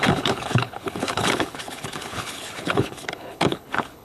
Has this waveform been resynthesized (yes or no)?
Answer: yes